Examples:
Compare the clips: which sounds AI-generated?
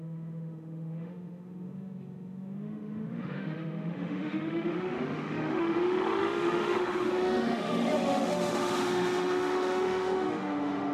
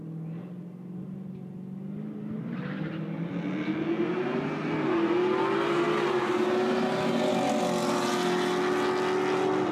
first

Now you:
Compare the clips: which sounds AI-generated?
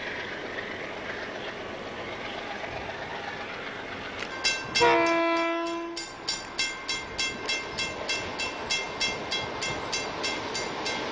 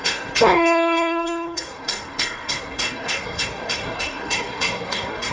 second